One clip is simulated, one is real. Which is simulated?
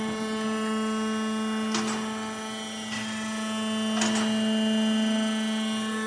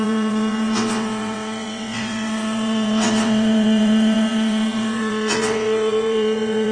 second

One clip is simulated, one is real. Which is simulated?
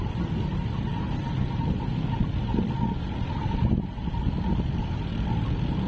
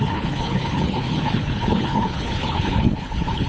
second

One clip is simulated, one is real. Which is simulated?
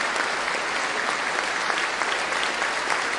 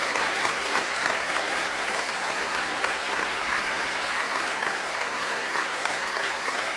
second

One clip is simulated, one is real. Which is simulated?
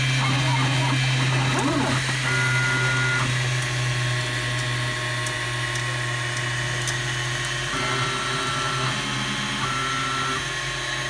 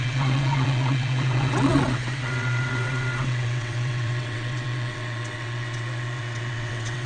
second